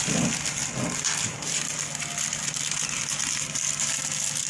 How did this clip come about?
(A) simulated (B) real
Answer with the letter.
B